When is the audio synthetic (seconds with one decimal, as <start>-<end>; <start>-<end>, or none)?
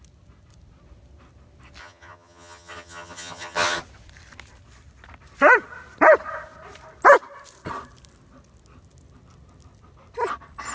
1.8-3.8